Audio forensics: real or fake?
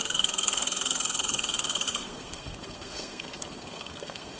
fake